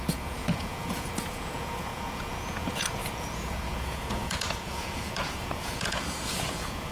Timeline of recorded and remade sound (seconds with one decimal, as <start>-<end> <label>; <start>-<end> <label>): 0.0-6.9 remade